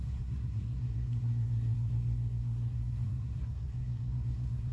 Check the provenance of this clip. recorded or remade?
remade